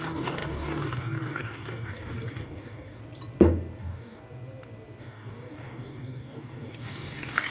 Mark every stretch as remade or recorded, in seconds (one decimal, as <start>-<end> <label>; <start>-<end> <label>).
0.0-3.0 remade; 3.0-3.8 recorded; 3.8-4.2 remade; 4.2-5.0 recorded; 5.0-7.5 remade

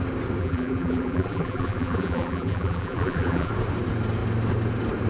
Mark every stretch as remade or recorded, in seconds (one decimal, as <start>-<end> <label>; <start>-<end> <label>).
0.0-0.4 recorded; 0.4-3.5 remade; 3.5-5.1 recorded

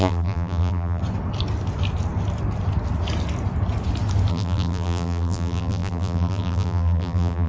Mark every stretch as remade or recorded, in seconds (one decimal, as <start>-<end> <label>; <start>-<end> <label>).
0.0-1.0 remade; 1.0-4.3 recorded; 4.3-7.5 remade

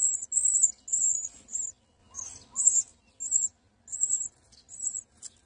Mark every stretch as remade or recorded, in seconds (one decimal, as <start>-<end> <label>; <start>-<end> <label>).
0.0-5.5 recorded